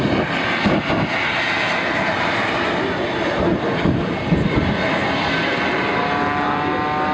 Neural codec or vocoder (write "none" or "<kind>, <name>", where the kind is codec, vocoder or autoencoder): none